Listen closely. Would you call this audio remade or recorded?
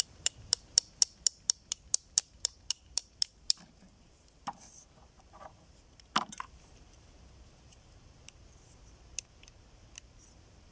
remade